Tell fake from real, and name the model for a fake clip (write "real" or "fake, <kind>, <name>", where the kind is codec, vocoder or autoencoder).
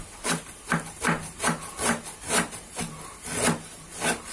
real